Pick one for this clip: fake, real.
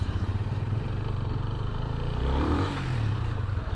fake